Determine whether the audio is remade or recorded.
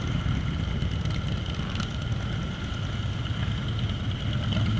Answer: recorded